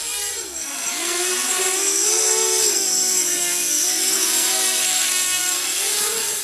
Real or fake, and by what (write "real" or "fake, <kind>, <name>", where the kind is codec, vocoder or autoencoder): fake, codec, SNAC